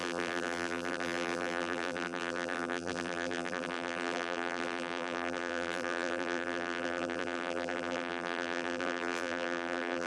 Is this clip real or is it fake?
fake